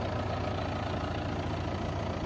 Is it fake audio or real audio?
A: real